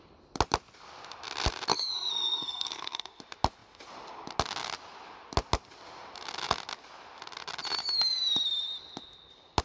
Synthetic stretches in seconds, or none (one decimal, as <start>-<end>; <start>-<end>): 1.7-3.2